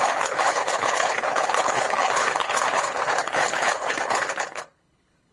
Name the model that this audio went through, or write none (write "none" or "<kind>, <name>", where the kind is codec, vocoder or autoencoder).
codec, HILCodec